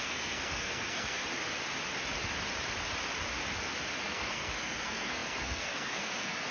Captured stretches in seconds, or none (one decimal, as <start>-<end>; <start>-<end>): 1.2-4.0